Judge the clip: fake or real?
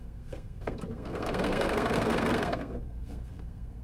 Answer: fake